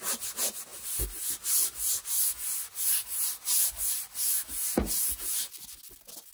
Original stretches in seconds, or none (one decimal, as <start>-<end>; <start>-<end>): 0.0-6.3